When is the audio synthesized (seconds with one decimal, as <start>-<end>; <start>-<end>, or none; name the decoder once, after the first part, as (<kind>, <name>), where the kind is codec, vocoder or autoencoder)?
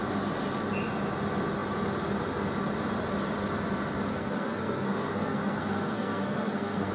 4.1-6.9 (codec, SNAC)